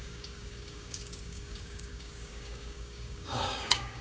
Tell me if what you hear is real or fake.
fake